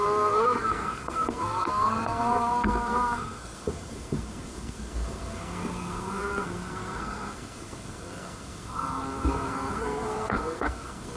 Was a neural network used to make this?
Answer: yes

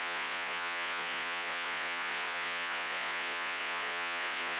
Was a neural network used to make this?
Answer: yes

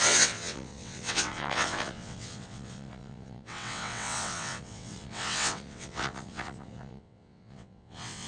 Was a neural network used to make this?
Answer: yes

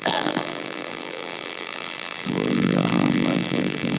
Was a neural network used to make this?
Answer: yes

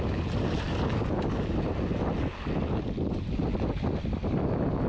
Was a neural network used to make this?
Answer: no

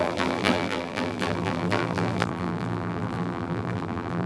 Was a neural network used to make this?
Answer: yes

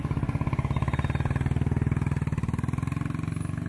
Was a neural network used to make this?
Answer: no